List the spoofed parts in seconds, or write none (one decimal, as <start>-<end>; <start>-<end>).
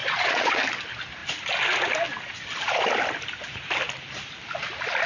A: 0.0-0.6